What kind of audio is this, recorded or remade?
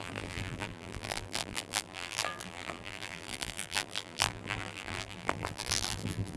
remade